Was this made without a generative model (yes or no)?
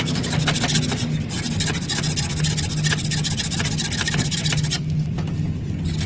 yes